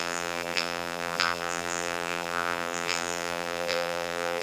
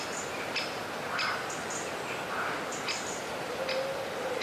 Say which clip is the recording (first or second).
second